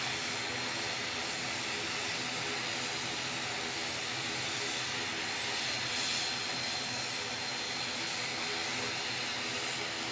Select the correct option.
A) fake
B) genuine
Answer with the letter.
B